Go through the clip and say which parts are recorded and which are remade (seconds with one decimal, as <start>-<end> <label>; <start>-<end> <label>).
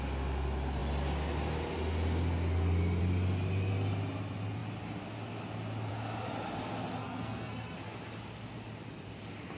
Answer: 0.0-7.0 recorded; 7.0-7.8 remade; 7.8-9.6 recorded